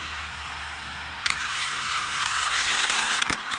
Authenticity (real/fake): fake